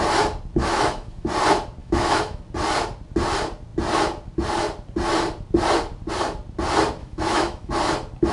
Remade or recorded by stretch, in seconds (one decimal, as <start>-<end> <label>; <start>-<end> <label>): 0.0-0.6 recorded; 0.6-1.3 remade; 1.3-1.8 recorded; 1.8-2.4 remade; 2.4-7.0 recorded; 7.0-7.7 remade; 7.7-8.3 recorded